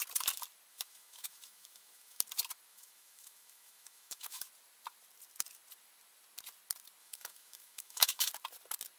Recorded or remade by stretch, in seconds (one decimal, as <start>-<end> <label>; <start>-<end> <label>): 0.0-0.7 recorded; 0.7-2.2 remade; 2.2-2.7 recorded; 2.7-4.5 remade; 4.5-7.0 recorded; 7.0-8.3 remade; 8.3-9.0 recorded